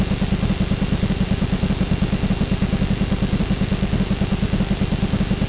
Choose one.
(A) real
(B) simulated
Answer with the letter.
A